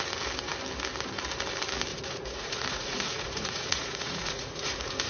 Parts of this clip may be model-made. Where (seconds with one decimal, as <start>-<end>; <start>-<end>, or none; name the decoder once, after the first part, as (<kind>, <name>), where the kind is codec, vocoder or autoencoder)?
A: 1.9-5.1 (vocoder, Vocos)